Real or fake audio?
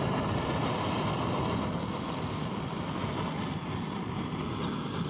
real